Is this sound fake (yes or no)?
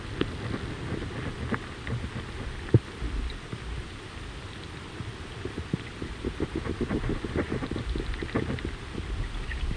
no